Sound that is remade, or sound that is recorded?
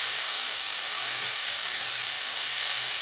remade